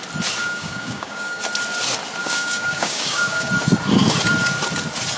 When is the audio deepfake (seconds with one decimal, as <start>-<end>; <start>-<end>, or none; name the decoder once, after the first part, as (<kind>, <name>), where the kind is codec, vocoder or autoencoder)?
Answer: 0.4-1.4 (codec, DAC); 2.2-3.5